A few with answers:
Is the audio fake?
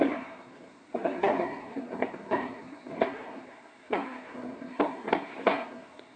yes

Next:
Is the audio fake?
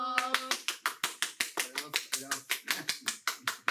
no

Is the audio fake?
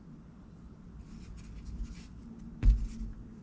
no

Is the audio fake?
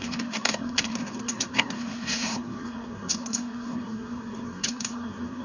yes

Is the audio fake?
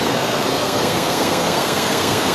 yes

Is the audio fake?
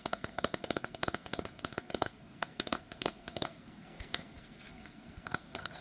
yes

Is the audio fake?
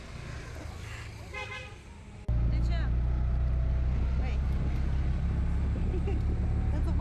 no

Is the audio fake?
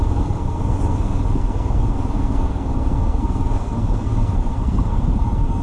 yes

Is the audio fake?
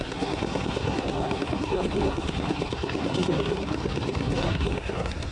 yes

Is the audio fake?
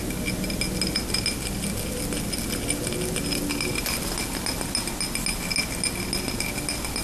no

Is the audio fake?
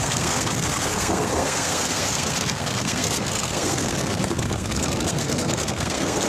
yes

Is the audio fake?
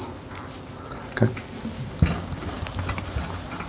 no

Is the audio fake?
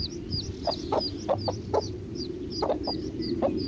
no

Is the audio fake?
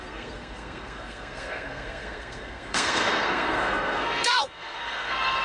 yes